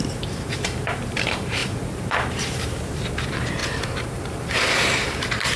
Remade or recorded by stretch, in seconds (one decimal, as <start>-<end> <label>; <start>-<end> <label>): 0.0-5.6 remade